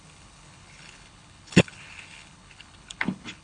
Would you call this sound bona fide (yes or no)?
no